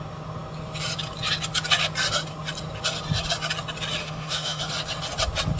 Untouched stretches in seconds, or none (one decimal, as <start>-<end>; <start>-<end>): 0.0-4.0; 4.6-5.6